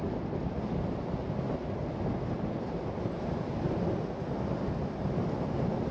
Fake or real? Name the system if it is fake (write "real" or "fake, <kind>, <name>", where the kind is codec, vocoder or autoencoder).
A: real